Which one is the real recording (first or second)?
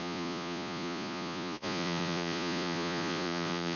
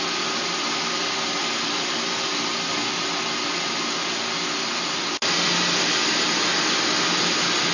second